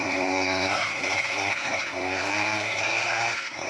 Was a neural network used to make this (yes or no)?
yes